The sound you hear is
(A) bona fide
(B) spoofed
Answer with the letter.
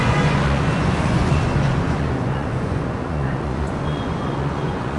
B